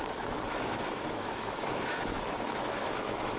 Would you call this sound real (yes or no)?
no